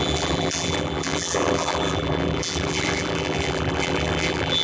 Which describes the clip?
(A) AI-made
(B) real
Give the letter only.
A